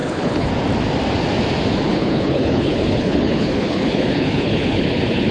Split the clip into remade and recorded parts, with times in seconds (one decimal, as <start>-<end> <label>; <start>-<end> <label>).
0.0-0.5 remade; 0.5-1.9 recorded; 1.9-5.3 remade